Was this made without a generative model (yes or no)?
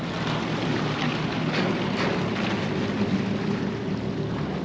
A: yes